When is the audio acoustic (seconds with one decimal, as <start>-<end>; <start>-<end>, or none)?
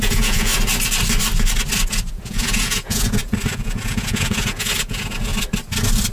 0.5-2.1; 5.3-6.1